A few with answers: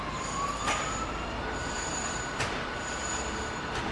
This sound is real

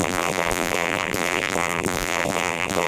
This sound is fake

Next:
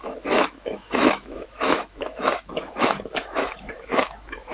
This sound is fake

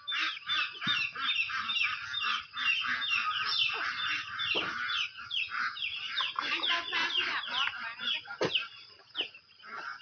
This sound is real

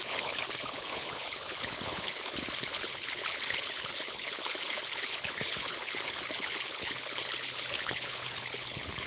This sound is fake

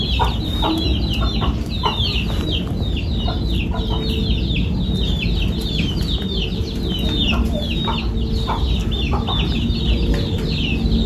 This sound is real